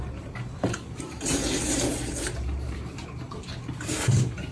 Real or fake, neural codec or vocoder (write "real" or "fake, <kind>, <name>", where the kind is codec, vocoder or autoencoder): fake, vocoder, BigVGAN v2